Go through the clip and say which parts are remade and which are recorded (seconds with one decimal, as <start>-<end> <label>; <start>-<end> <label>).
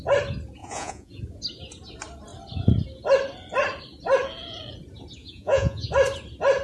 0.0-0.6 recorded; 0.6-1.2 remade; 1.2-5.2 recorded; 5.2-5.9 remade; 5.9-6.6 recorded